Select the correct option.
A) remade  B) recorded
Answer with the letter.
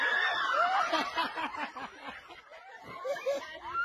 B